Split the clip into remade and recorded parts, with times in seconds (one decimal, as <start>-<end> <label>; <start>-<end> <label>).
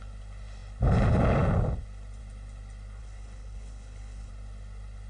0.0-3.0 recorded; 3.0-4.3 remade; 4.3-5.1 recorded